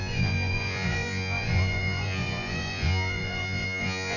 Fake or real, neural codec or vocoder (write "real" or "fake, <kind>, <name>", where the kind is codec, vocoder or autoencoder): fake, vocoder, Vocos